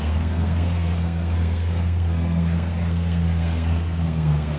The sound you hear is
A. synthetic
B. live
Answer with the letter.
A